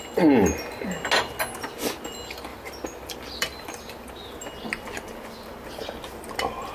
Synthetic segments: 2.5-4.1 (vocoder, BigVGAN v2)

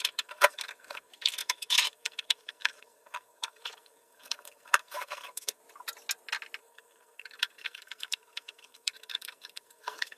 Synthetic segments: 0.0-5.6 (codec, SNAC); 6.6-10.2

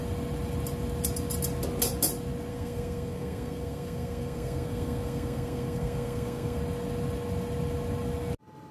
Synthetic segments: 2.5-6.6 (codec, SNAC)

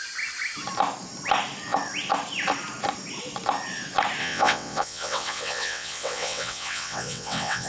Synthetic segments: 4.2-7.7 (vocoder, WaveNeXt)

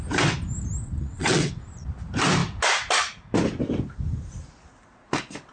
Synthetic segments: 0.8-1.5 (vocoder, WaveNeXt)